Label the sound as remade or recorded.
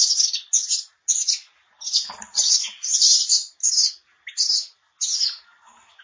recorded